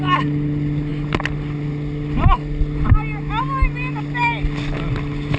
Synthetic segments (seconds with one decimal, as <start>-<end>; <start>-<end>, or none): none